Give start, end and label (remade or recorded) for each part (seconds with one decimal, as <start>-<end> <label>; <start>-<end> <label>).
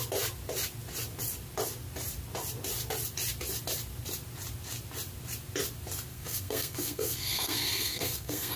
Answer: 0.0-6.1 recorded; 6.1-8.6 remade